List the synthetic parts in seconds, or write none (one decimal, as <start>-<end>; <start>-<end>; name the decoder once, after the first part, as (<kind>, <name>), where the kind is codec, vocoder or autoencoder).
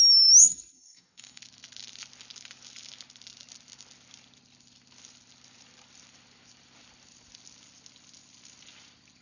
0.4-1.4 (codec, DAC)